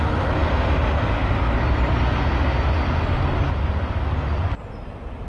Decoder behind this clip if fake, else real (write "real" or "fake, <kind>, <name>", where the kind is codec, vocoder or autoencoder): real